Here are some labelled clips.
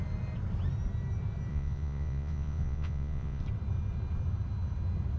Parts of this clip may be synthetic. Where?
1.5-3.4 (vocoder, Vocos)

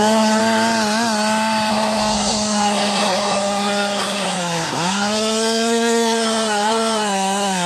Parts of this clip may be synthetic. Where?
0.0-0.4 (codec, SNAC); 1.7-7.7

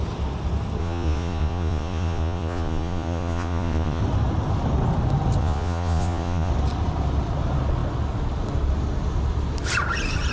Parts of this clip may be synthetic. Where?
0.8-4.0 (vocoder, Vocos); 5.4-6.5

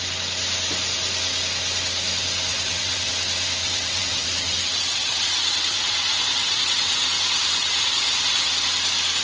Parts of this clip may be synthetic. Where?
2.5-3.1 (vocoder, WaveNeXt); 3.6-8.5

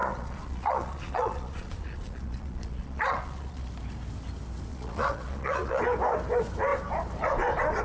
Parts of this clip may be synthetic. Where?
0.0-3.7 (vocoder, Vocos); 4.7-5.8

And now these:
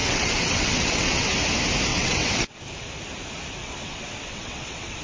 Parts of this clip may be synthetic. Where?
0.0-1.2 (vocoder, WaveNeXt); 1.9-2.7; 3.6-5.0